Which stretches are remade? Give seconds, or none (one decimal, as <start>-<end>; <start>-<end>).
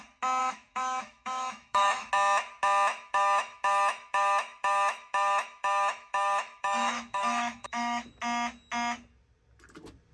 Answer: 0.4-2.1; 2.9-8.1